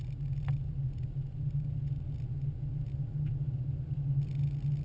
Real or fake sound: real